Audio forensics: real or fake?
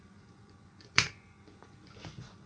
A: fake